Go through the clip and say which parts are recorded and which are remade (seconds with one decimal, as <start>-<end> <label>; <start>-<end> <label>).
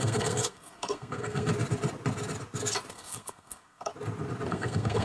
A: 0.0-1.5 remade; 1.5-2.9 recorded; 2.9-3.9 remade; 3.9-4.5 recorded; 4.5-5.0 remade